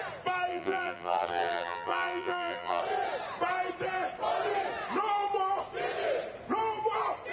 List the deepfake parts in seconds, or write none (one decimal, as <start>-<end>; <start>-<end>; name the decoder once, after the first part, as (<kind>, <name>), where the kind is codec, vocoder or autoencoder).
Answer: 0.5-2.8 (vocoder, BigVGAN v2)